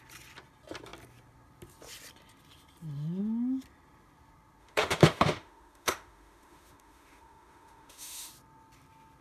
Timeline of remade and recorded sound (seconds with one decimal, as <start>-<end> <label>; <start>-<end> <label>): 0.0-4.6 recorded; 4.6-8.3 remade; 8.3-9.2 recorded